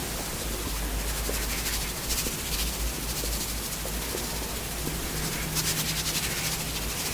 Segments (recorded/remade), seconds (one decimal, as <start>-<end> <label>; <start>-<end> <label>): 0.0-7.1 recorded